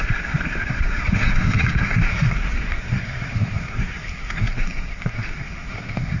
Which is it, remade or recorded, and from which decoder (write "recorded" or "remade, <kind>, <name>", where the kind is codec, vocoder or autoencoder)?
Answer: remade, codec, SNAC